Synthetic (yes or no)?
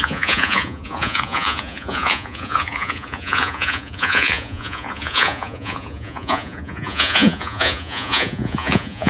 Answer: yes